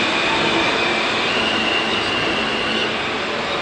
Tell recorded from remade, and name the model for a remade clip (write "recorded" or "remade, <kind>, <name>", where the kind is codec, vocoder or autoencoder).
recorded